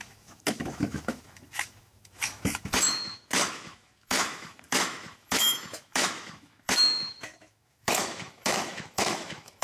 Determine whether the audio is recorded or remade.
remade